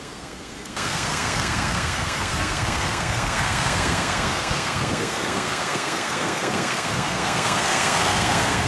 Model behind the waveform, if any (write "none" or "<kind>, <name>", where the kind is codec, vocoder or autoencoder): codec, SNAC